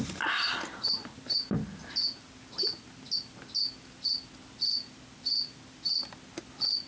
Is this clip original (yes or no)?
yes